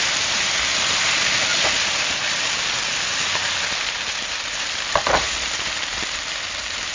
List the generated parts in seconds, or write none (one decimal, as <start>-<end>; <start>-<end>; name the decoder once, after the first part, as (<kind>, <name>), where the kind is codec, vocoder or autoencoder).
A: none